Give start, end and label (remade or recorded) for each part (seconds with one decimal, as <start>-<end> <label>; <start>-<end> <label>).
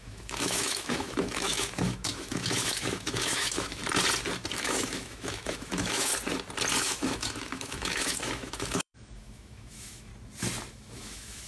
0.0-3.8 remade; 3.8-4.5 recorded; 4.5-6.1 remade; 6.1-6.8 recorded; 6.8-10.1 remade; 10.1-10.7 recorded; 10.7-11.5 remade